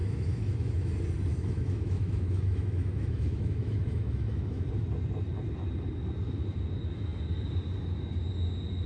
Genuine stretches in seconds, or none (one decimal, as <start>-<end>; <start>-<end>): 0.9-1.3; 4.7-8.9